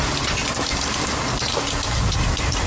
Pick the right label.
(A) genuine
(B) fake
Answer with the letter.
A